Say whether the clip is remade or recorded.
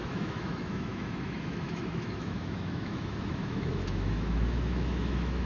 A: remade